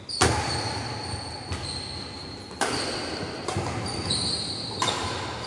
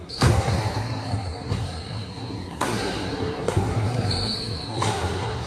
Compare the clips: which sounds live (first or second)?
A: first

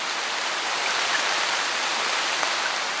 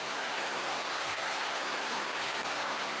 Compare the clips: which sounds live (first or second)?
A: first